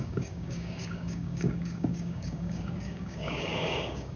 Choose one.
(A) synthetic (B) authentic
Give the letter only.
A